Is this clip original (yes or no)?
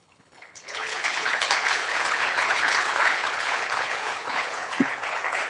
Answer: no